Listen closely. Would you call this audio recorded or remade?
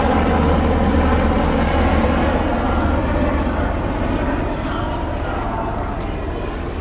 recorded